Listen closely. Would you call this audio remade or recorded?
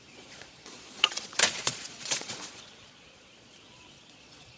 remade